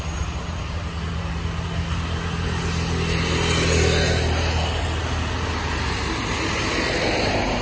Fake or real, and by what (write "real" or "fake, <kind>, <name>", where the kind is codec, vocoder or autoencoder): real